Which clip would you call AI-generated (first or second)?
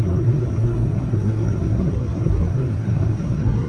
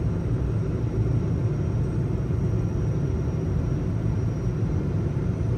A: first